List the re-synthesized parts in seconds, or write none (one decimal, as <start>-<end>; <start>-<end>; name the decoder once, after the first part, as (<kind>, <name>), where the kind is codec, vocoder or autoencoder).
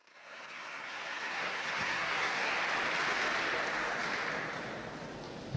0.0-2.5 (codec, SNAC)